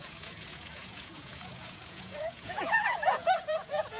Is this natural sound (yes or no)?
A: no